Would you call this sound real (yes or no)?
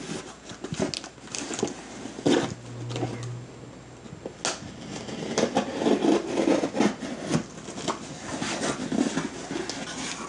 yes